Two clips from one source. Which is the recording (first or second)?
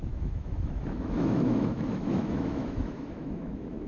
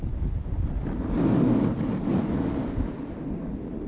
second